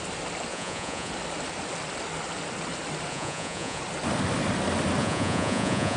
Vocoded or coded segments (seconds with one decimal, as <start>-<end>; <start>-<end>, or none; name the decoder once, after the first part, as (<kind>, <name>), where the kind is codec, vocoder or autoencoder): 0.5-1.1 (vocoder, Vocos); 3.1-3.8; 5.0-6.0